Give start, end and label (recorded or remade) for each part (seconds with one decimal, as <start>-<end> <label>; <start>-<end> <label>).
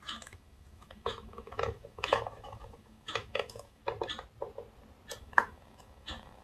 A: 0.0-3.8 remade; 3.8-5.2 recorded; 5.2-6.4 remade